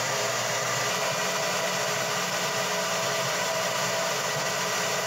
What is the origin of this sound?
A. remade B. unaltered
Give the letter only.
B